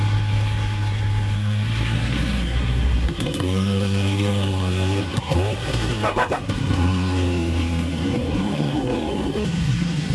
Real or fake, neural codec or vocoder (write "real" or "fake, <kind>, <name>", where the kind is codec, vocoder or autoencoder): fake, codec, SNAC